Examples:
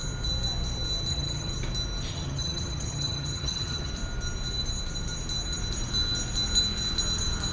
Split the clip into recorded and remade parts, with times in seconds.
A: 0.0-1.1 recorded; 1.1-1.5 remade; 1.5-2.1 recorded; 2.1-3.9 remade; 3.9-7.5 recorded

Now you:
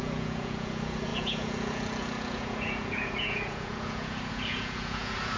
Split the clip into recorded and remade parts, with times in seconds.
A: 0.0-5.4 remade

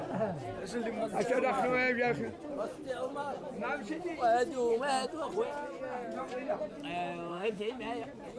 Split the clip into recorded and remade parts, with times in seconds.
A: 0.0-7.3 recorded; 7.3-7.8 remade; 7.8-8.4 recorded

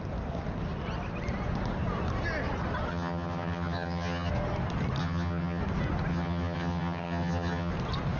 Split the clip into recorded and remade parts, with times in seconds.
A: 0.0-2.9 recorded; 2.9-4.3 remade; 4.3-5.0 recorded; 5.0-5.6 remade; 5.6-6.1 recorded; 6.1-7.7 remade; 7.7-8.2 recorded

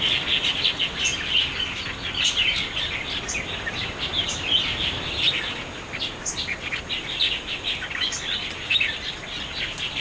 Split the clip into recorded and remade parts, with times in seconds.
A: 0.0-10.0 recorded